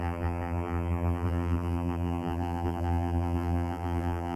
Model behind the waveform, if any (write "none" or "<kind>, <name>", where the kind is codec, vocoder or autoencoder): vocoder, BigVGAN v2